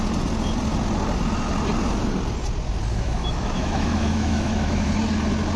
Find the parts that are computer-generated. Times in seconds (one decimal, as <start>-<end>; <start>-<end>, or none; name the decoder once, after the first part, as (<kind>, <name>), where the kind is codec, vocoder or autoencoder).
2.9-4.9 (autoencoder, DAC-VAE)